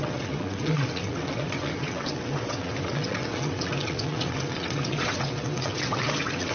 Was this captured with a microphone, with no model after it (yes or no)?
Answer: no